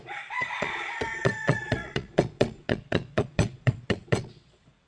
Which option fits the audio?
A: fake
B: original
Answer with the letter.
A